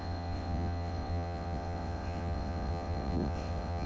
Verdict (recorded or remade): remade